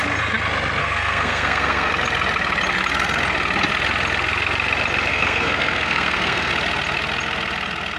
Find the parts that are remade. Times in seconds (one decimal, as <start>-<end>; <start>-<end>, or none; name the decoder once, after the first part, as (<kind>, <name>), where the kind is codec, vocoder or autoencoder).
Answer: 0.8-1.9 (codec, SNAC); 5.1-6.5